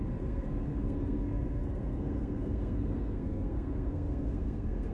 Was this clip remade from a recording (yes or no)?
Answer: yes